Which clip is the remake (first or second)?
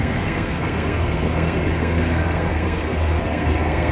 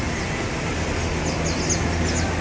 first